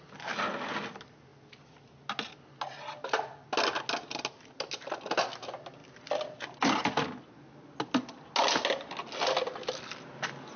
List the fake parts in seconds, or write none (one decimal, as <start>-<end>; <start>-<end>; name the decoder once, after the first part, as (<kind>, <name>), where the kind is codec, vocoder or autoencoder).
none